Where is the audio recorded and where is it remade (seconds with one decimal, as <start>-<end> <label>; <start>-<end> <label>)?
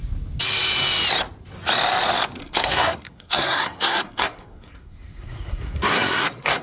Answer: 0.0-2.4 recorded; 2.4-6.6 remade